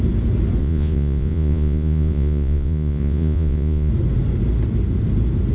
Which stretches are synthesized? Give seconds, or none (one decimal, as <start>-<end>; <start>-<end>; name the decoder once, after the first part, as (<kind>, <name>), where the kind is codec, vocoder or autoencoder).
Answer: 0.6-3.9 (vocoder, Vocos)